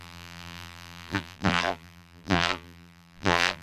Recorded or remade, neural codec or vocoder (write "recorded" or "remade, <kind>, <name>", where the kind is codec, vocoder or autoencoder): remade, vocoder, BigVGAN v2